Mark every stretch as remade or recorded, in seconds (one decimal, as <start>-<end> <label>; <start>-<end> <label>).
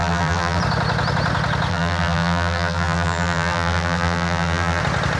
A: 0.0-0.6 remade; 0.6-1.7 recorded; 1.7-4.8 remade; 4.8-5.2 recorded